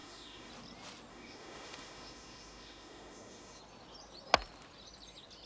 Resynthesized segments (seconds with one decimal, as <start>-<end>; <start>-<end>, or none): 0.0-0.5; 1.1-3.6